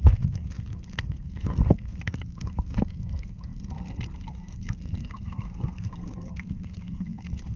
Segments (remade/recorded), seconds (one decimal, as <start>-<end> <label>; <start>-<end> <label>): 0.0-7.6 remade

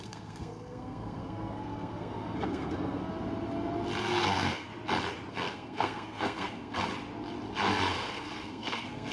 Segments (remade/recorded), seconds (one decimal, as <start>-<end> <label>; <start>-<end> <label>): 0.0-3.0 remade; 3.0-4.0 recorded; 4.0-4.7 remade; 4.7-5.3 recorded; 5.3-6.9 remade; 6.9-7.9 recorded; 7.9-9.1 remade